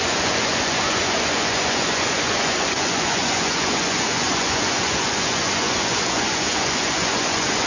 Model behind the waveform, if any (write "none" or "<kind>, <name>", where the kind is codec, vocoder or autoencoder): vocoder, Vocos